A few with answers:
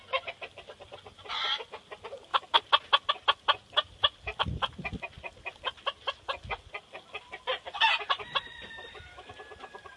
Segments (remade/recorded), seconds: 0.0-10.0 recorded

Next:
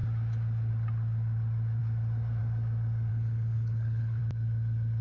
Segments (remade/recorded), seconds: 0.0-3.1 recorded; 3.1-4.2 remade; 4.2-5.0 recorded

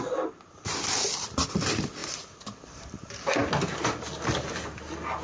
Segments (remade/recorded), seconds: 0.0-5.2 recorded